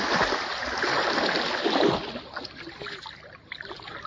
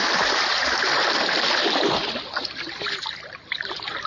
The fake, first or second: second